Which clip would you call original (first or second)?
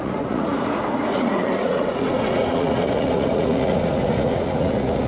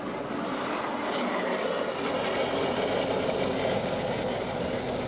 second